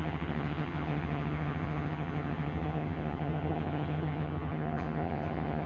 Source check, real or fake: fake